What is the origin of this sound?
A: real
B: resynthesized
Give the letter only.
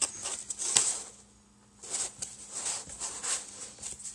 A